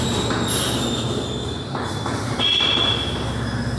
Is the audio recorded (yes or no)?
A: yes